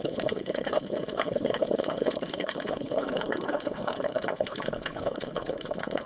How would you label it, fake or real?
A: fake